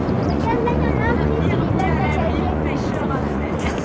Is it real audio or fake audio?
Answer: fake